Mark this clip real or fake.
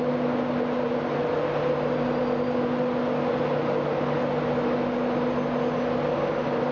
real